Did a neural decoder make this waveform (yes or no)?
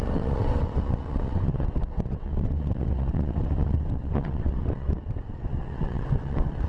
yes